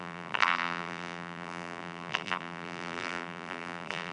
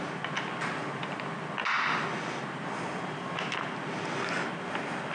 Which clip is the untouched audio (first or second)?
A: second